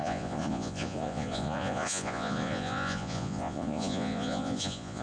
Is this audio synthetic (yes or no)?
yes